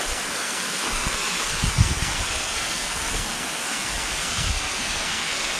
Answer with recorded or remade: remade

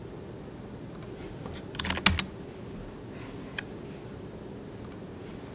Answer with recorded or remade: recorded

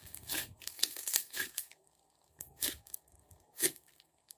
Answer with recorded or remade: remade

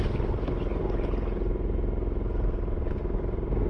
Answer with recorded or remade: recorded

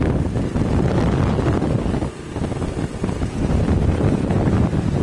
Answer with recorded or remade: recorded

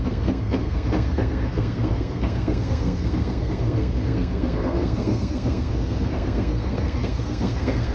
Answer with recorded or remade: remade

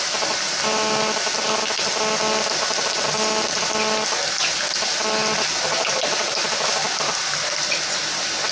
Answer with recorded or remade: recorded